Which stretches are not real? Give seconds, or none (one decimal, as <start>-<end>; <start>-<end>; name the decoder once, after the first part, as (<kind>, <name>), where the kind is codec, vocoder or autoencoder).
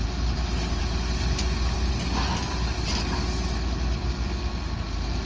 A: none